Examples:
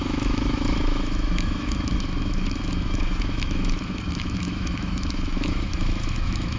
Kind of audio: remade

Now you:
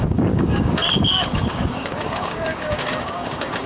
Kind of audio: remade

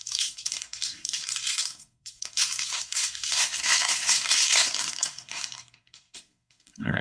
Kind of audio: remade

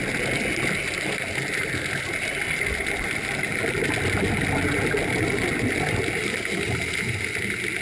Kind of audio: recorded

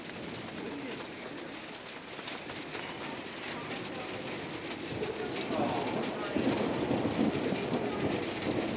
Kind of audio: recorded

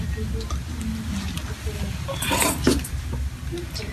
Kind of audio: recorded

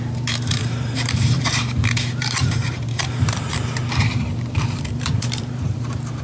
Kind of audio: remade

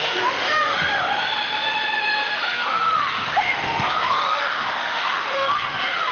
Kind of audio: remade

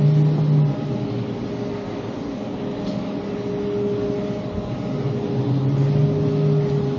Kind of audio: recorded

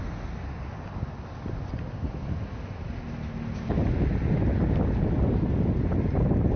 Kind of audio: recorded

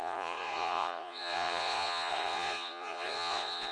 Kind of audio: remade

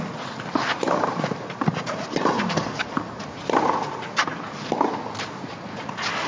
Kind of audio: recorded